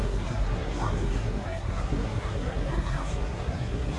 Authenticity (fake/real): fake